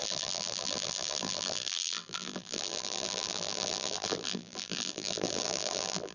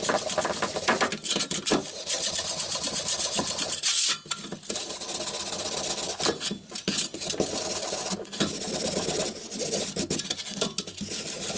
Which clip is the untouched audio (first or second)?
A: second